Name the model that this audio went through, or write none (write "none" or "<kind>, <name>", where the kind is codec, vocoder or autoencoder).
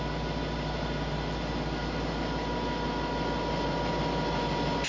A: none